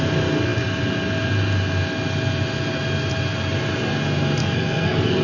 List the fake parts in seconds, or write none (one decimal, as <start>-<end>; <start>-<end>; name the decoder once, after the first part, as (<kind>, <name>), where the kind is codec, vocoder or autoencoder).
4.4-5.2 (codec, SNAC)